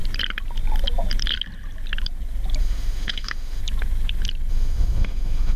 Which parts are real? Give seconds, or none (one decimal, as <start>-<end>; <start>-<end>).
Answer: 0.0-2.6; 3.6-4.5